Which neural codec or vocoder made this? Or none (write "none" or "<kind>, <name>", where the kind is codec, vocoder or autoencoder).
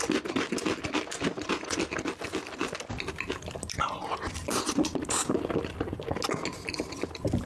none